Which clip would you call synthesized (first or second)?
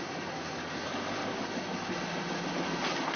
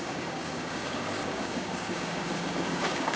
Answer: second